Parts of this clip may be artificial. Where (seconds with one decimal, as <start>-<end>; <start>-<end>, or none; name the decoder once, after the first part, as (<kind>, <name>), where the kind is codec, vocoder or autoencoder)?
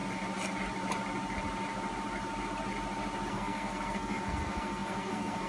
3.3-5.5 (codec, SNAC)